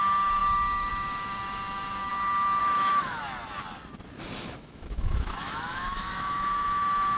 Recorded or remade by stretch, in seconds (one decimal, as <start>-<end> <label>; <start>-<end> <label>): 0.0-2.1 remade; 2.1-2.6 recorded; 2.6-3.2 remade; 3.2-4.6 recorded; 4.6-7.2 remade